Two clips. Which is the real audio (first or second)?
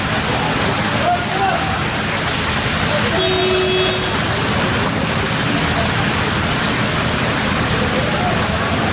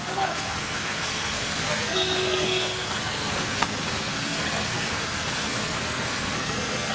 first